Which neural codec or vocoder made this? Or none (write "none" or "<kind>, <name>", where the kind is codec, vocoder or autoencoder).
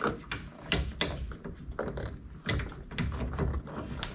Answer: none